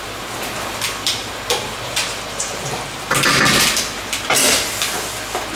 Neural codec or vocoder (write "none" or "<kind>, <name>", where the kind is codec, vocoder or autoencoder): none